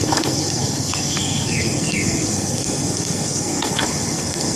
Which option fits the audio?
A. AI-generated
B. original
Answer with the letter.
A